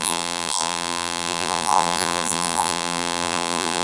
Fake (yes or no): yes